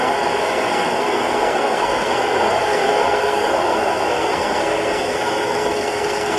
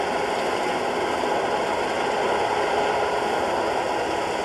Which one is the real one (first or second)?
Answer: second